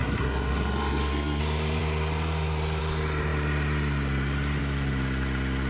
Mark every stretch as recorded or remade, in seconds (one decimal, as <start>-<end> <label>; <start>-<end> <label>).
0.0-1.4 remade; 1.4-5.7 recorded